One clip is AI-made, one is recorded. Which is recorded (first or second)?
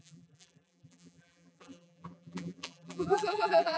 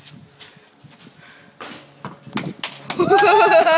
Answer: second